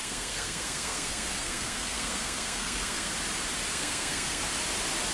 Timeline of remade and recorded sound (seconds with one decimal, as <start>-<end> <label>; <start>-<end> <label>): 0.0-3.1 remade; 3.1-3.7 recorded; 3.7-4.4 remade; 4.4-5.1 recorded